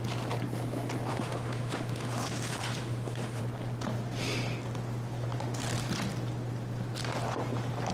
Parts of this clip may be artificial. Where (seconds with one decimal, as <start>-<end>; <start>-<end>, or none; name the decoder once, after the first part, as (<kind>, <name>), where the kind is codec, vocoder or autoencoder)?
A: 1.1-3.4 (autoencoder, DAC-VAE)